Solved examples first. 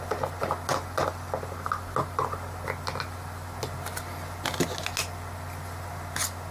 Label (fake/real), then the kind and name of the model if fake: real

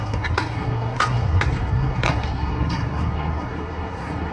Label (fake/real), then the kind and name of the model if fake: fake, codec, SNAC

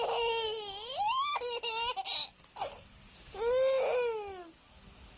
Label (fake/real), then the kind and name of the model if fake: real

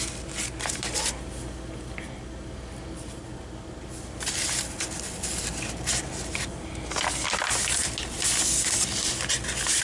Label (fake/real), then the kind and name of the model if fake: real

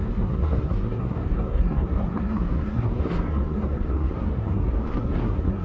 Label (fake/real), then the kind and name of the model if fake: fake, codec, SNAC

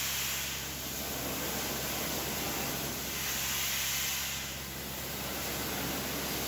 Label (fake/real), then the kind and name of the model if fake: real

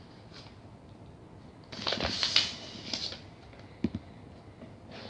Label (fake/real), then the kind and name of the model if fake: real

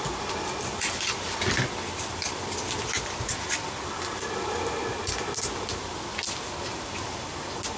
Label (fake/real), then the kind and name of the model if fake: real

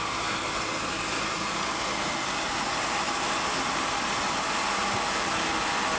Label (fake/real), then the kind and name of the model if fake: real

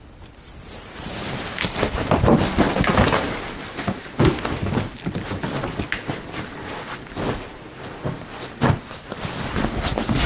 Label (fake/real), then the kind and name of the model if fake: real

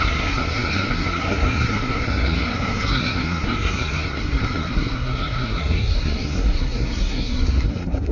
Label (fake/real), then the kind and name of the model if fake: fake, codec, SNAC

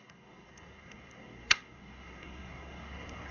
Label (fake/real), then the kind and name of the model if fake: fake, codec, SNAC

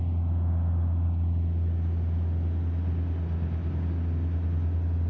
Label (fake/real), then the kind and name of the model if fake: real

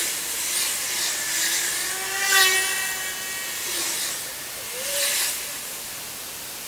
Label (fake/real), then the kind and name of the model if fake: real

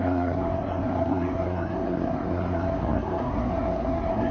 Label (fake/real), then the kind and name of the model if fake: fake, codec, SNAC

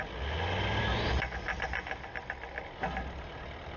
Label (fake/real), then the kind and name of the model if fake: real